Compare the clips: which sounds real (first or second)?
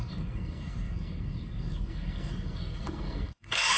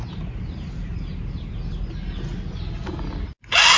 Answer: second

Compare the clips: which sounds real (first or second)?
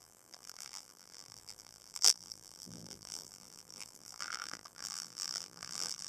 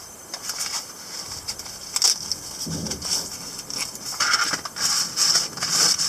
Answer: second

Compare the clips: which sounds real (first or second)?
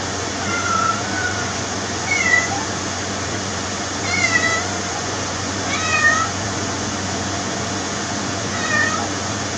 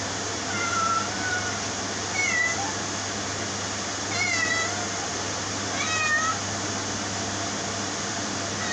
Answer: second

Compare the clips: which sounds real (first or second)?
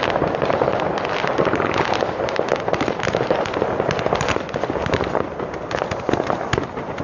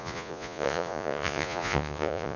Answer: first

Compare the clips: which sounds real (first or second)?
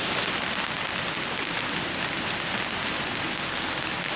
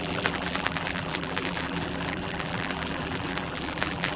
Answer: first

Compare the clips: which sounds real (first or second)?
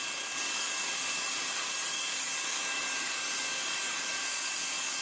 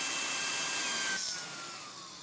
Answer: second